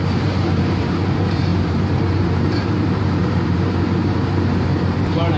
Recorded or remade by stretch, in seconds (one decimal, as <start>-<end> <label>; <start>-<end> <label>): 0.0-5.4 remade